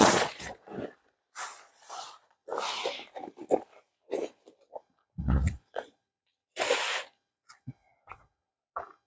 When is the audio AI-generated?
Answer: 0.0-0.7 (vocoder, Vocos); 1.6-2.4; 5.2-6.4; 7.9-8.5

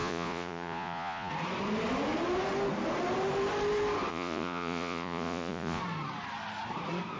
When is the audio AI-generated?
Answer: 0.0-1.3 (vocoder, Vocos); 4.1-5.8

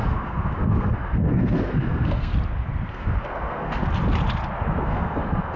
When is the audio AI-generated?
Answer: 0.0-2.3 (codec, SNAC); 2.9-3.8; 4.8-5.6

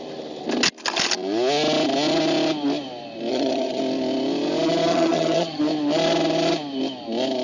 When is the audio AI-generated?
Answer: 3.3-3.8 (vocoder, HiFi-GAN); 4.9-5.6